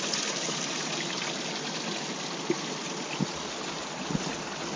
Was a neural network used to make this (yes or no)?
no